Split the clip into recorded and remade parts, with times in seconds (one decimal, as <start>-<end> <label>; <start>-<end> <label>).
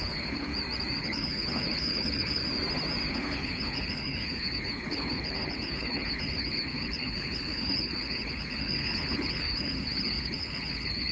0.0-0.5 remade; 0.5-1.0 recorded; 1.0-2.4 remade; 2.4-3.1 recorded; 3.1-11.1 remade